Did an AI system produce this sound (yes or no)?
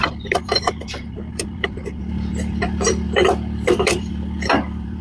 yes